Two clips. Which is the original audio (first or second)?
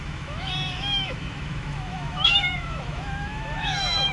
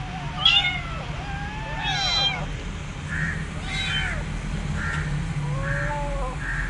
second